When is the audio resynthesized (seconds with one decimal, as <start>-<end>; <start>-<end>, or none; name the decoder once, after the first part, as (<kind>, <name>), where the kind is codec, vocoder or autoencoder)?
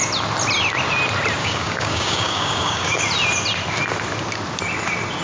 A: 1.4-3.0 (codec, DAC)